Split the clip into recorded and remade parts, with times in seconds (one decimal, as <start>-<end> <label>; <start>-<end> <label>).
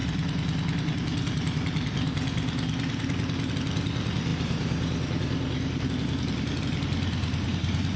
0.0-4.3 remade; 4.3-6.6 recorded; 6.6-8.0 remade